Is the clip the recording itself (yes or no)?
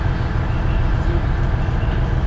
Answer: yes